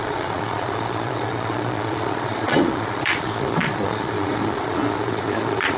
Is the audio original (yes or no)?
no